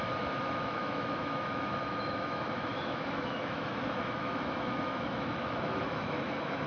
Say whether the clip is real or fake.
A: fake